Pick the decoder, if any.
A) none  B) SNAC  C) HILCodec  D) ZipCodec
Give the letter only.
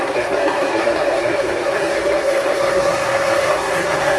B